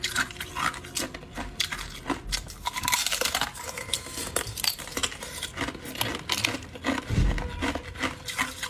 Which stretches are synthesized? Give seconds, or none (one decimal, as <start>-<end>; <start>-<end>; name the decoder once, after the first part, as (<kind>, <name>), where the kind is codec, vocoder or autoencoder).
none